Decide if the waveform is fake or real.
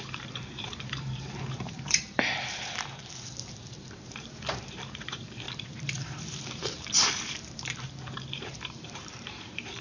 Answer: fake